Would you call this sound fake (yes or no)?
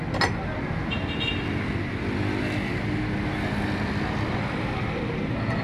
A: no